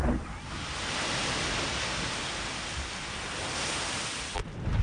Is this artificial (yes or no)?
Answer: no